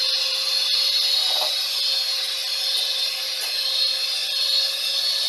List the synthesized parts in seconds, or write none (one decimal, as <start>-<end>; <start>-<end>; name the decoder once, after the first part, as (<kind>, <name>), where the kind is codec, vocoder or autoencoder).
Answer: none